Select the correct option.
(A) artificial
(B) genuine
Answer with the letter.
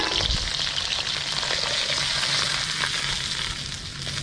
B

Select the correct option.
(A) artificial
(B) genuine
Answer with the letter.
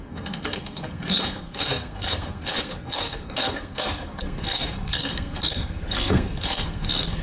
A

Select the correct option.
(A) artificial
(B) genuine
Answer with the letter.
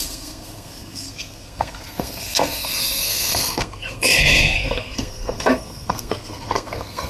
A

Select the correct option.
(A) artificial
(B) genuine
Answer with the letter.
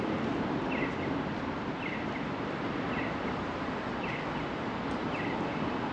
B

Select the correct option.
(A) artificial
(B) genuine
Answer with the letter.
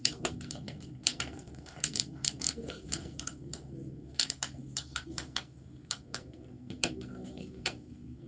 A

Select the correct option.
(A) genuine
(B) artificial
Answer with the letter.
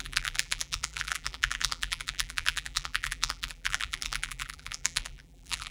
B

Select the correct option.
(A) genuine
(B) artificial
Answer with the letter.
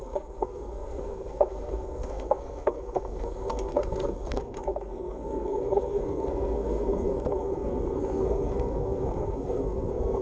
B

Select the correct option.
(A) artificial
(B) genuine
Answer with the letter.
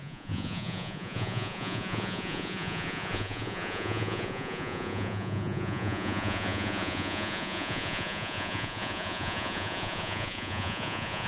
A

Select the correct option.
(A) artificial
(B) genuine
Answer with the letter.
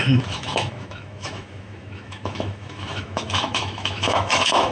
A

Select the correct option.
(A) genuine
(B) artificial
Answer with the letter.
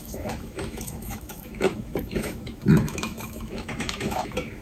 B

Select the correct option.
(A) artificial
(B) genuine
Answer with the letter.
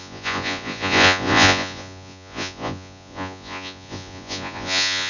A